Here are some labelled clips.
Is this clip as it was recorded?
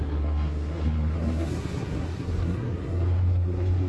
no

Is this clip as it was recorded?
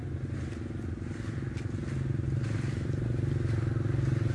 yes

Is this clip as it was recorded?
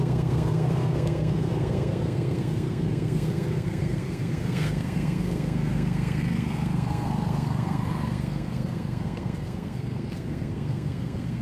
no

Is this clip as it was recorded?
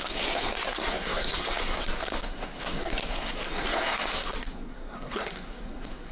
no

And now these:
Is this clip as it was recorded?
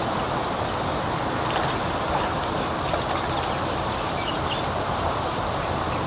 yes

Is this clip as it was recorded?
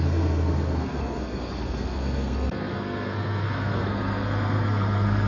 no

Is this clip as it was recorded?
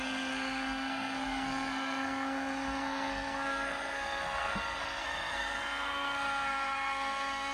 no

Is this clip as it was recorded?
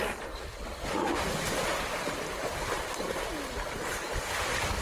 yes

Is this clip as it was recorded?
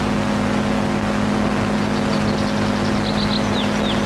yes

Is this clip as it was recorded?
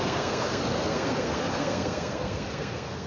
no